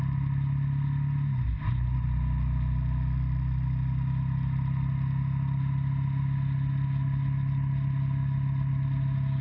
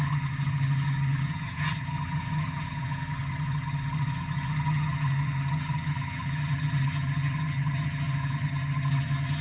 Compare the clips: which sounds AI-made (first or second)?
second